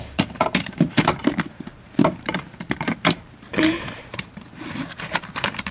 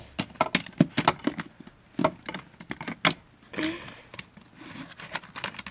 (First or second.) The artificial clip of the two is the first